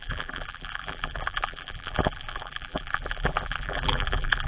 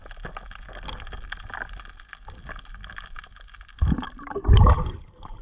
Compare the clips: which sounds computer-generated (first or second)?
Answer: first